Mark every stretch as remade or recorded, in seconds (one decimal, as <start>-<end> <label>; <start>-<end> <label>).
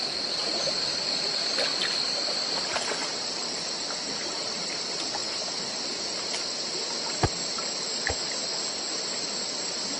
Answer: 0.0-10.0 recorded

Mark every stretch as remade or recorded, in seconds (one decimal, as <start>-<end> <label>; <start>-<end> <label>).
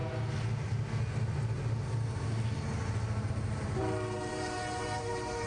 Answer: 0.0-3.3 recorded; 3.3-5.5 remade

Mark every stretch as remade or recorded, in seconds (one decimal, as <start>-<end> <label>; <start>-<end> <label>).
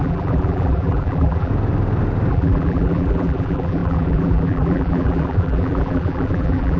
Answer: 0.0-1.5 remade; 1.5-2.3 recorded; 2.3-6.8 remade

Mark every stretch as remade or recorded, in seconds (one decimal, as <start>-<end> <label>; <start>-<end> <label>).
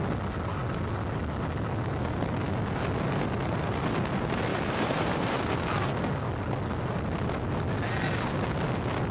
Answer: 0.0-4.5 recorded; 4.5-5.5 remade; 5.5-9.1 recorded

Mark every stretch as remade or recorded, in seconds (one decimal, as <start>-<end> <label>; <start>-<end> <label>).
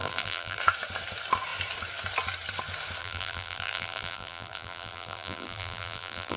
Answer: 0.0-0.6 remade; 0.6-3.0 recorded; 3.0-6.4 remade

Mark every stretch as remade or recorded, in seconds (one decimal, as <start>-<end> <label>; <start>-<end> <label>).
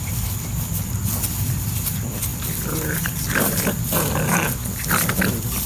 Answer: 0.0-5.7 recorded